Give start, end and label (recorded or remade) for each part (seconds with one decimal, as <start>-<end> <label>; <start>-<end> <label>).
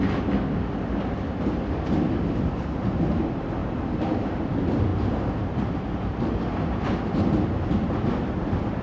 0.0-4.9 recorded; 4.9-6.3 remade; 6.3-8.8 recorded